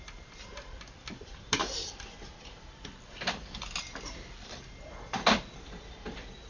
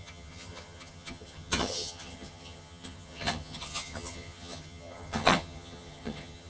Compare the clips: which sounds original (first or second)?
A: first